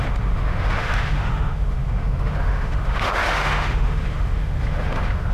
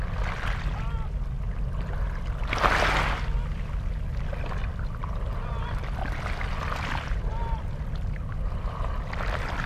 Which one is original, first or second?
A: second